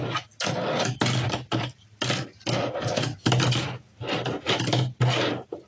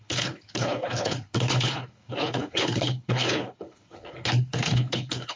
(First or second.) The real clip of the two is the first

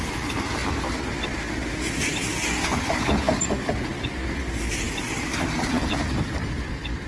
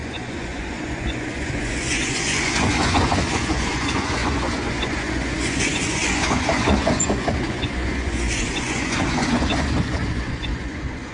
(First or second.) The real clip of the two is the first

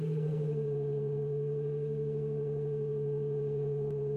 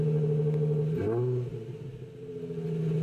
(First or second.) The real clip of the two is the second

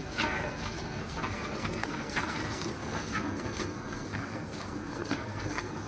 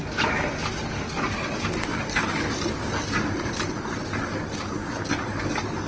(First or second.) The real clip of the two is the second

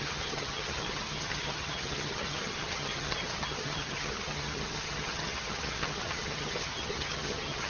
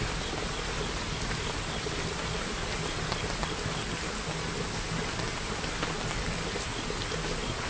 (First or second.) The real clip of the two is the second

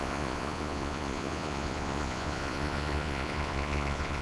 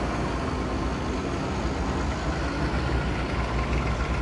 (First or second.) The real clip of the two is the second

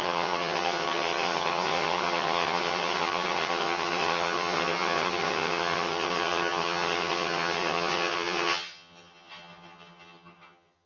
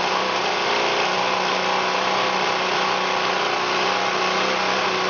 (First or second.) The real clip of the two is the second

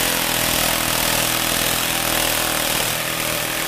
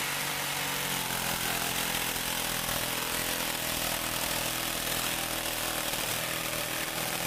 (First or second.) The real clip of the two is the first